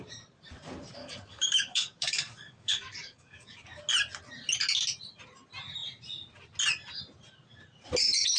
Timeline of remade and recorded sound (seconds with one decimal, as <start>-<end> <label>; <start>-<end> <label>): 0.0-1.0 recorded; 1.0-3.8 remade; 3.8-8.4 recorded